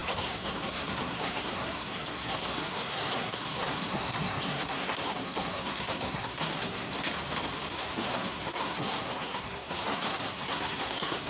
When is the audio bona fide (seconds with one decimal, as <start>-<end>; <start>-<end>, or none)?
6.9-7.7